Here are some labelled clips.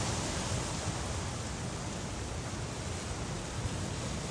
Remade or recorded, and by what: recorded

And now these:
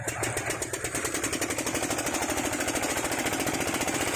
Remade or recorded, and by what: recorded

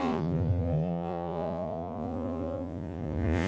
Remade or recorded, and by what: remade, vocoder, Vocos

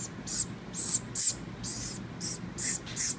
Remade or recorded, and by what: recorded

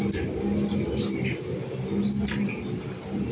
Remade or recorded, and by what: recorded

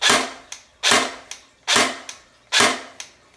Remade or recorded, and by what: recorded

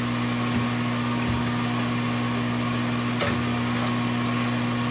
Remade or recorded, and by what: recorded